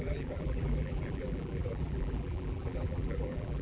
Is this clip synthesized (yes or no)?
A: yes